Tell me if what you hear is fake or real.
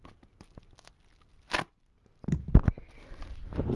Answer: real